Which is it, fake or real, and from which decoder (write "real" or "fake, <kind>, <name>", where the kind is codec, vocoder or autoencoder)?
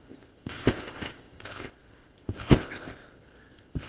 fake, codec, ZipCodec